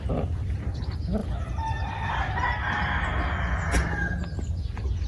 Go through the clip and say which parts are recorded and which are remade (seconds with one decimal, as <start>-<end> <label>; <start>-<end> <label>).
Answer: 0.0-1.2 recorded; 1.2-2.4 remade; 2.4-5.1 recorded